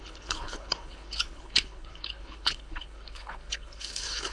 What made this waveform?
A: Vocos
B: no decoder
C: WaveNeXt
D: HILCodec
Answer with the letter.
D